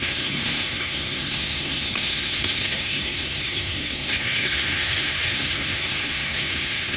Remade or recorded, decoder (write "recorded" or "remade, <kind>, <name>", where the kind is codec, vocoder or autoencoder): remade, codec, SNAC